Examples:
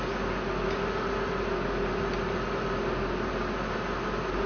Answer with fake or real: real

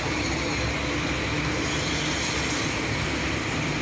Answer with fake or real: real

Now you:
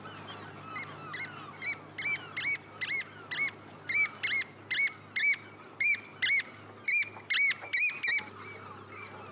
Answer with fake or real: real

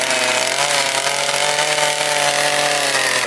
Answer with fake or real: real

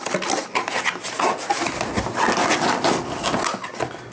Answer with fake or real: real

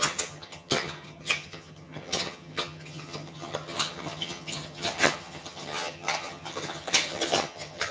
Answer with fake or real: fake